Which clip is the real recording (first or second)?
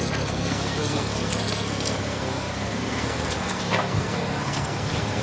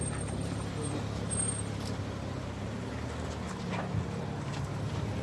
second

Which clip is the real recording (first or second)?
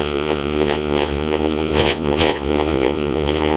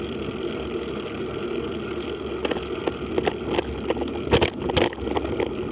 second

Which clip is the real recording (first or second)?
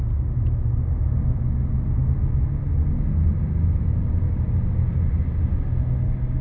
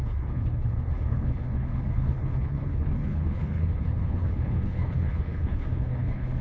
first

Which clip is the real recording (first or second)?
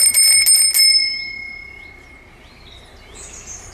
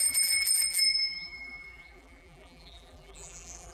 first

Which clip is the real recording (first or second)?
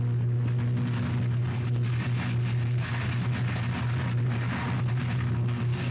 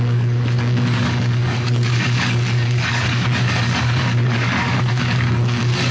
first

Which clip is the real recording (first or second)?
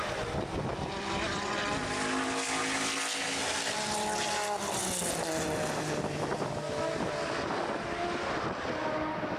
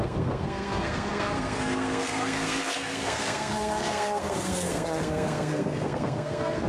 first